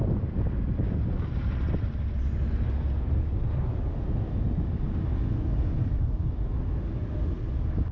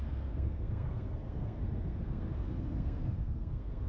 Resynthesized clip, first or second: second